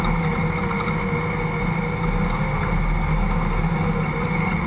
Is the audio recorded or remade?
recorded